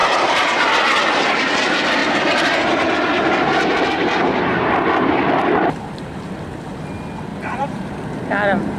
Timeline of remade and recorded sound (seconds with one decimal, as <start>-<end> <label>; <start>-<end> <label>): 0.0-0.7 remade; 0.7-2.0 recorded; 2.0-6.3 remade; 6.3-7.3 recorded; 7.3-7.9 remade; 7.9-8.8 recorded